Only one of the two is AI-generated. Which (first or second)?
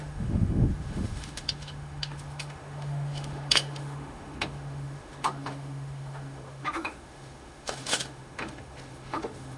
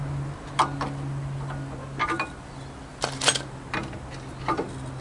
first